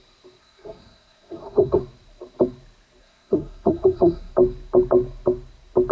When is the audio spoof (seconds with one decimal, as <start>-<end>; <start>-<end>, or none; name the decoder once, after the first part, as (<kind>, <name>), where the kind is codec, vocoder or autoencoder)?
0.4-1.8 (codec, SNAC); 3.0-4.3